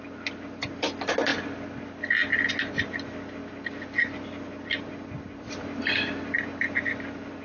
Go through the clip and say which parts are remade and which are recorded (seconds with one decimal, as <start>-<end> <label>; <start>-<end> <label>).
0.0-7.4 recorded

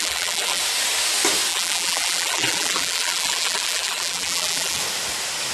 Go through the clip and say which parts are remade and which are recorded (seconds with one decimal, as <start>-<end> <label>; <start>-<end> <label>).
0.0-0.6 remade; 0.6-1.5 recorded; 1.5-4.8 remade; 4.8-5.5 recorded

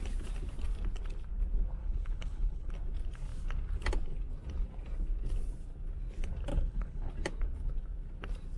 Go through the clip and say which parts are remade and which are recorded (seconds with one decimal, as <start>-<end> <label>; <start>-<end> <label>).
0.0-1.8 recorded; 1.8-2.7 remade; 2.7-6.5 recorded; 6.5-7.1 remade; 7.1-8.6 recorded

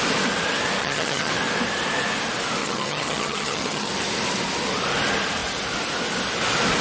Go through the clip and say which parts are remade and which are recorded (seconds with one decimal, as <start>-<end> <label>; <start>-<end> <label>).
0.0-0.8 recorded; 0.8-1.3 remade; 1.3-2.6 recorded; 2.6-3.9 remade; 3.9-6.8 recorded

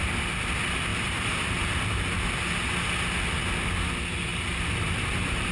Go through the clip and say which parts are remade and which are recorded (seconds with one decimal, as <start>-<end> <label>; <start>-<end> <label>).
0.0-0.9 recorded; 0.9-1.6 remade; 1.6-4.3 recorded; 4.3-5.5 remade

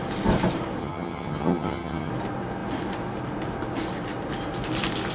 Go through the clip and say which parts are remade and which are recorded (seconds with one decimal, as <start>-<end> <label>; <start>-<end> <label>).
0.0-0.8 recorded; 0.8-2.1 remade; 2.1-5.1 recorded

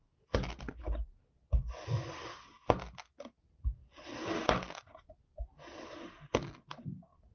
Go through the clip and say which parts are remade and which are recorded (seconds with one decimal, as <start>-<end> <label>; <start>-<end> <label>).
0.0-7.3 recorded